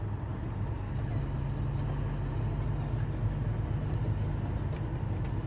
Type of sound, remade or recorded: recorded